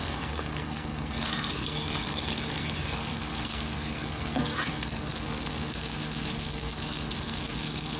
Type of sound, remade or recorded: remade